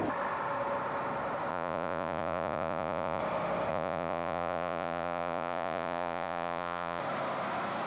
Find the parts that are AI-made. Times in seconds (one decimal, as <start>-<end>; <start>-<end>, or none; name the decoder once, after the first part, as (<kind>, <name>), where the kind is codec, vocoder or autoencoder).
1.5-3.2 (vocoder, Vocos); 3.7-7.0

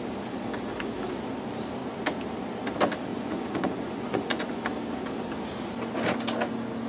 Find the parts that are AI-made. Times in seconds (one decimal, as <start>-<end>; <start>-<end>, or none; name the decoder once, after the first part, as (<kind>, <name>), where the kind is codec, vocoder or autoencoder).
3.1-4.5 (vocoder, Vocos)